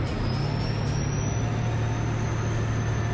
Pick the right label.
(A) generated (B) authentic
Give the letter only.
B